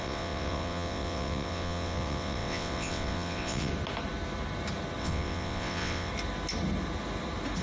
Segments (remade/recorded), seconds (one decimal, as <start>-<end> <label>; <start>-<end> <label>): 0.0-3.7 remade; 3.7-5.0 recorded; 5.0-6.1 remade; 6.1-7.6 recorded